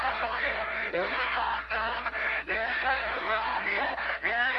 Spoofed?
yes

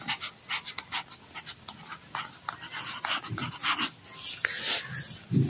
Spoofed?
no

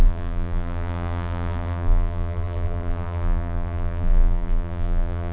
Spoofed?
yes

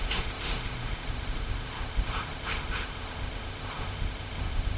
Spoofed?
yes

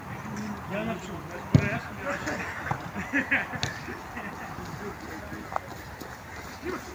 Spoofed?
no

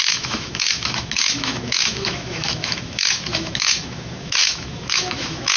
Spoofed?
yes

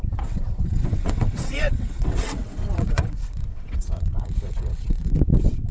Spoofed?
yes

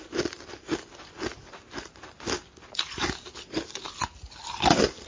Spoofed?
no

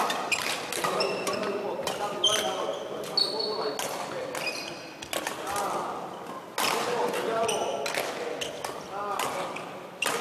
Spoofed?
no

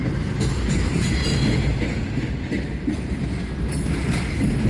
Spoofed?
no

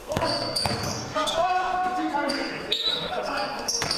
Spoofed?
yes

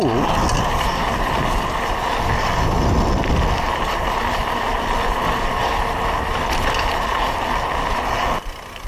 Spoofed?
no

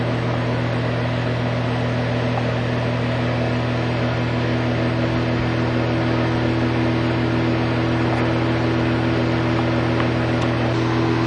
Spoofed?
no